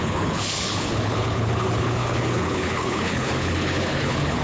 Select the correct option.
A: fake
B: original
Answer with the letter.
A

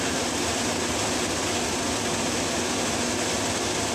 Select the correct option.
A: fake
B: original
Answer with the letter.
B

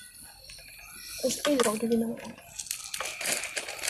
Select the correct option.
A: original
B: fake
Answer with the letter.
A